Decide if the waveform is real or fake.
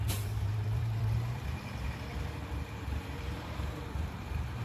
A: fake